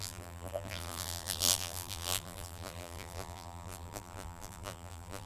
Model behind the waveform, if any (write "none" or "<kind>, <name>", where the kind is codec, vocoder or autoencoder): vocoder, BigVGAN v2